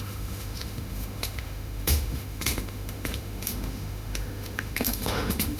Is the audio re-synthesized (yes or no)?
yes